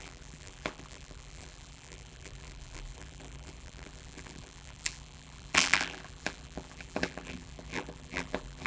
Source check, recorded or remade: remade